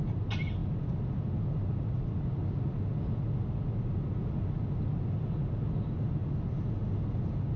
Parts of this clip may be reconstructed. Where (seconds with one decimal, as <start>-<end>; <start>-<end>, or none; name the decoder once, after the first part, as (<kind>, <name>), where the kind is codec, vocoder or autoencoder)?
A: none